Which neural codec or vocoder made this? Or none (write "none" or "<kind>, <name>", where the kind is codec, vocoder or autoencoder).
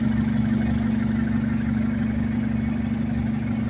none